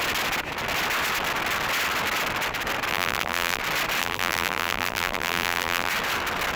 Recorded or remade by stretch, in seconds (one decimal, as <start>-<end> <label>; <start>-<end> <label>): 0.0-2.9 recorded; 2.9-3.6 remade; 3.6-4.0 recorded; 4.0-5.9 remade; 5.9-6.6 recorded